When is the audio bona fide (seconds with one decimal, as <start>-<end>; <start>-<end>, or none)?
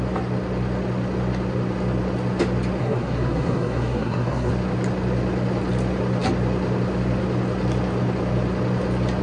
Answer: 0.0-2.8; 4.5-9.2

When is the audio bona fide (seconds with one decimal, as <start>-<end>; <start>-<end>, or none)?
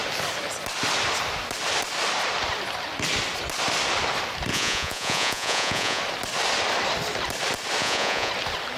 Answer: 0.0-4.5; 6.0-7.8; 8.3-8.8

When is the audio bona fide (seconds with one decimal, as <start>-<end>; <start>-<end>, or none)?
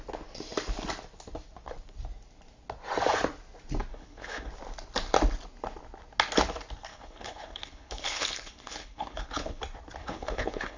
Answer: 0.0-3.9; 4.5-6.9; 9.6-10.0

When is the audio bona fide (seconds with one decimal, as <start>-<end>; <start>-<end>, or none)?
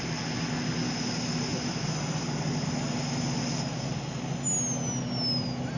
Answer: 0.0-5.8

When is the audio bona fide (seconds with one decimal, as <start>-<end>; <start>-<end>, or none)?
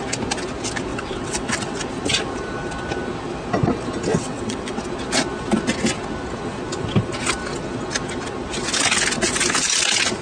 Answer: 0.0-0.9; 1.8-4.1; 4.8-10.2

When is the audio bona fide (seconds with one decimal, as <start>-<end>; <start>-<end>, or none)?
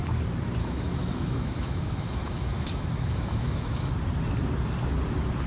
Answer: 0.0-0.6; 3.9-5.5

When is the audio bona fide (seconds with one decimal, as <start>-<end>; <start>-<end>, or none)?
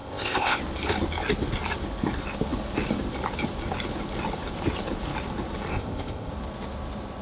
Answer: 0.6-5.7; 6.3-7.2